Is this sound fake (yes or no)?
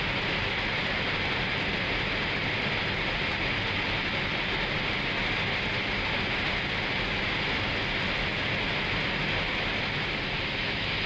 no